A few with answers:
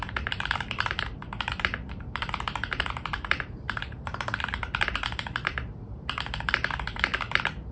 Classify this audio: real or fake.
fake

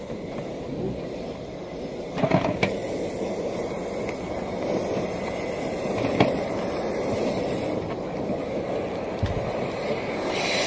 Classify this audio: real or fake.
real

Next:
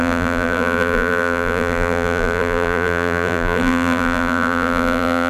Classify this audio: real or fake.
fake